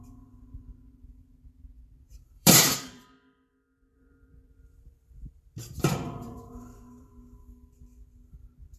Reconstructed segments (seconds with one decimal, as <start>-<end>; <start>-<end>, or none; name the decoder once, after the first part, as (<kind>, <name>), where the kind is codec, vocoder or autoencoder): 2.1-3.0 (vocoder, BigVGAN v2); 3.9-7.1